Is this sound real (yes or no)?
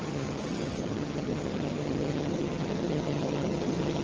no